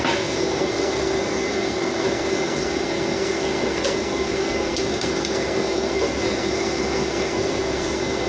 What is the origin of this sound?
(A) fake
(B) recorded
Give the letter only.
A